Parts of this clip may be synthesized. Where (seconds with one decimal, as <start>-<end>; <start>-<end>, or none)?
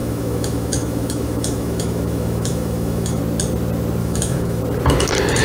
0.0-3.2; 4.0-4.6